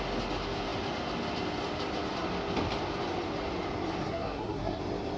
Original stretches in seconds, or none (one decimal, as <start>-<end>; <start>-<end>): 0.0-4.0; 4.8-5.2